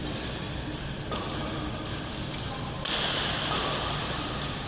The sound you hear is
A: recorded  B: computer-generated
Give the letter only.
A